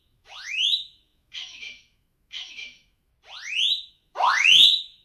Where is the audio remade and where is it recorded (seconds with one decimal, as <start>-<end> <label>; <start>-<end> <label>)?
0.0-3.1 remade; 3.1-3.9 recorded; 3.9-5.0 remade